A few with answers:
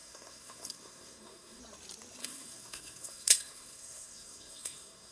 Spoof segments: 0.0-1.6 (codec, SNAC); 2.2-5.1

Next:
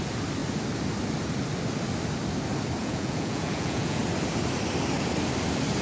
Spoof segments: 2.8-4.0 (vocoder, Vocos)

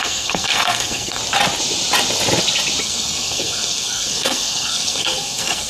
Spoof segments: 0.0-1.2 (codec, SNAC); 2.8-5.7